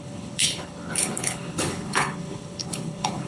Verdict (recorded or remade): remade